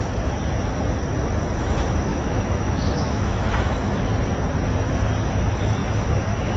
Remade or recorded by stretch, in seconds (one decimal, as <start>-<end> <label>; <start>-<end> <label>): 0.0-2.1 recorded; 2.1-4.1 remade; 4.1-5.8 recorded; 5.8-6.6 remade